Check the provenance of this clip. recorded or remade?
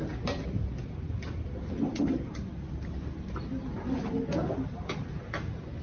recorded